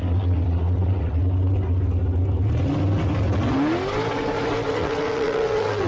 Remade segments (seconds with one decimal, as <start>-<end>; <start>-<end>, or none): 0.0-1.2; 4.7-5.9